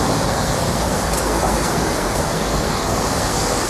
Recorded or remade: remade